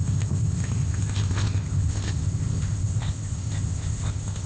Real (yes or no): no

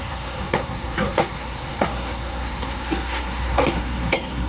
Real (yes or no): no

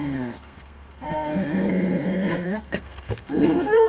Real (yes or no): no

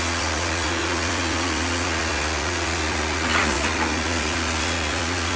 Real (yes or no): no